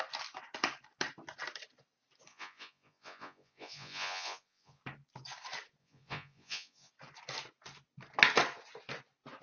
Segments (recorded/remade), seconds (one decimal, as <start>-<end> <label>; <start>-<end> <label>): 0.0-2.3 recorded; 2.3-4.8 remade; 4.8-5.8 recorded; 5.8-6.9 remade; 6.9-9.4 recorded